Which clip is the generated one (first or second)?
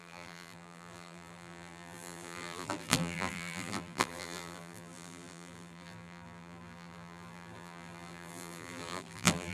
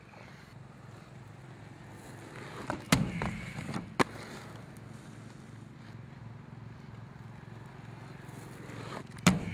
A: first